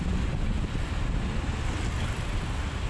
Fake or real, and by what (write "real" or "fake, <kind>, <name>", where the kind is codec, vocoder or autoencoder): real